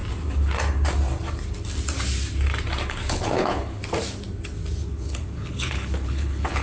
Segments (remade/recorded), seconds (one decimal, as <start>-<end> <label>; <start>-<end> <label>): 0.0-2.9 recorded; 2.9-3.8 remade; 3.8-4.8 recorded; 4.8-6.6 remade